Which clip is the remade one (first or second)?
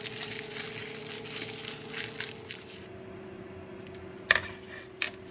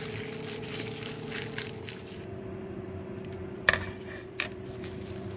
second